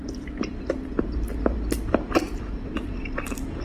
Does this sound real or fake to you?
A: fake